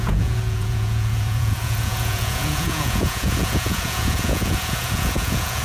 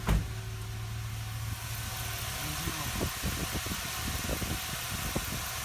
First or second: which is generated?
first